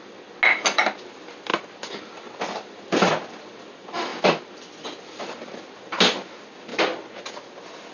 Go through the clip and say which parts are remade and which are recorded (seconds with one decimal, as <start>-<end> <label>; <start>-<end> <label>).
0.0-7.9 recorded